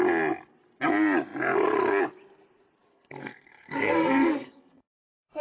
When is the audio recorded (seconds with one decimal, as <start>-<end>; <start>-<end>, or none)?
0.0-2.9